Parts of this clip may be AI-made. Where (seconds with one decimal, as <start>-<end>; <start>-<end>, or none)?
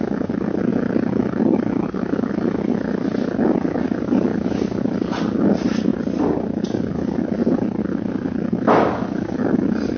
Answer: none